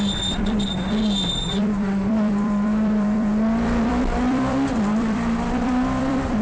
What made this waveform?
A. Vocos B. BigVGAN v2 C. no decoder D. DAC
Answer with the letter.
B